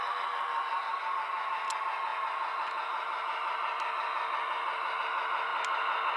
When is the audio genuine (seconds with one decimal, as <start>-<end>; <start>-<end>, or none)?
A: 0.0-6.2